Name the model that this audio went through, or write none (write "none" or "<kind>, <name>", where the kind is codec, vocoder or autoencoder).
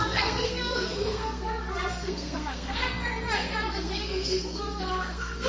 codec, SNAC